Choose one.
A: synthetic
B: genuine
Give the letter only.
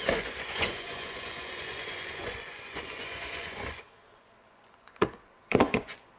A